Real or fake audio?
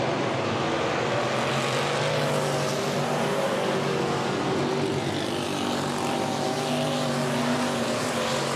real